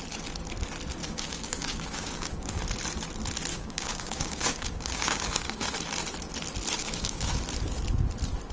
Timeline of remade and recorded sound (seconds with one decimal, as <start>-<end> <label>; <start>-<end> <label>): 0.0-1.0 recorded; 1.0-2.6 remade; 2.6-3.5 recorded; 3.5-5.7 remade; 5.7-6.8 recorded; 6.8-7.3 remade; 7.3-8.5 recorded